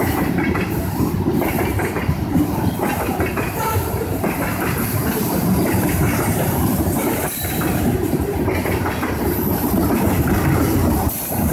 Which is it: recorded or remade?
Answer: remade